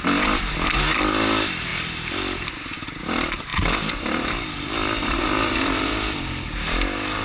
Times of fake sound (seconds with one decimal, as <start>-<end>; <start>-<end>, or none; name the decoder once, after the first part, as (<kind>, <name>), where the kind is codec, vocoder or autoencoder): 3.5-5.2 (vocoder, BigVGAN v2)